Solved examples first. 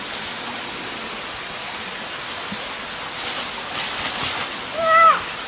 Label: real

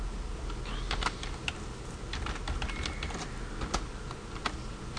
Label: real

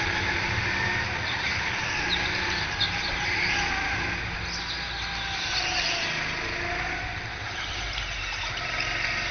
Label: real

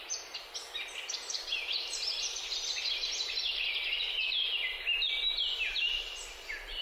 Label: real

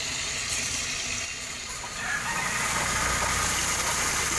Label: real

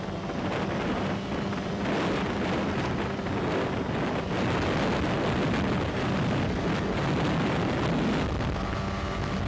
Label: real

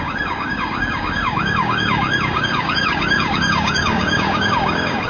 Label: fake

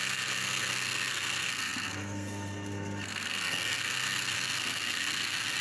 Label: fake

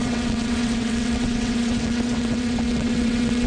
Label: fake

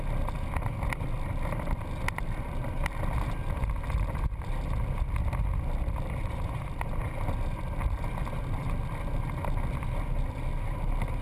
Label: real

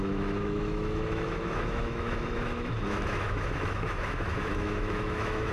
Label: fake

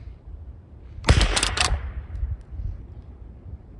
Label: fake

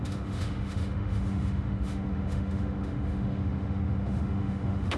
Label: fake